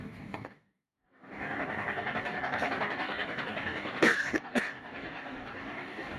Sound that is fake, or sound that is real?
fake